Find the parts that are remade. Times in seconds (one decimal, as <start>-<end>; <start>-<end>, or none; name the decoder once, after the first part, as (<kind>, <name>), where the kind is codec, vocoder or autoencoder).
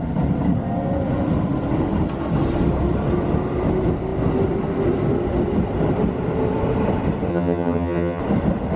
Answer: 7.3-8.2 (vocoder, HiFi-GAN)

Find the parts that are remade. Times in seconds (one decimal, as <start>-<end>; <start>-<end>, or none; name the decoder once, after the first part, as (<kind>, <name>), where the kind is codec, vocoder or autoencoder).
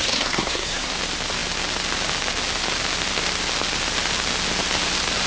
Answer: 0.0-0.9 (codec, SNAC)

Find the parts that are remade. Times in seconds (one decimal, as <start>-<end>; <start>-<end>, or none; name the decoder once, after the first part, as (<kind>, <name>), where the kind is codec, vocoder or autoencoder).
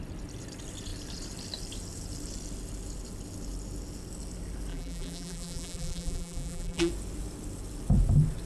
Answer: 4.7-6.9 (vocoder, BigVGAN v2)